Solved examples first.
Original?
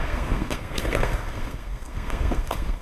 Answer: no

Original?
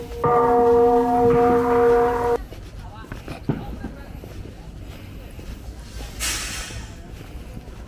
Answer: yes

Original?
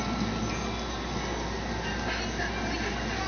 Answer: yes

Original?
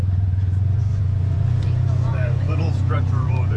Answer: no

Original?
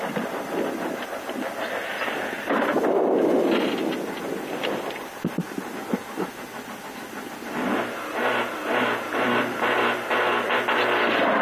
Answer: yes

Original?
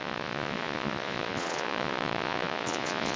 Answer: no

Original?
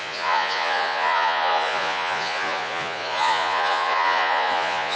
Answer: no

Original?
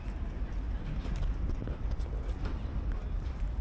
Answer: no